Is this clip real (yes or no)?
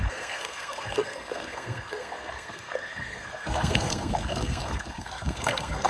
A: no